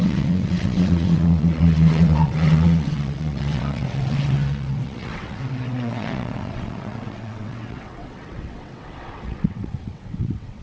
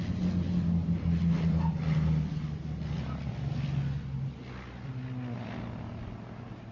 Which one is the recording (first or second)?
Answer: second